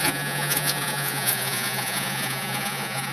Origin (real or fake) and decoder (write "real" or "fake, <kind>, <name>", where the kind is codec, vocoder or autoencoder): fake, vocoder, Vocos